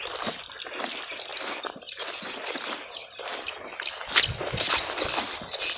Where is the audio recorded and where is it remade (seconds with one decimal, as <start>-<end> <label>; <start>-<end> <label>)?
0.0-5.8 recorded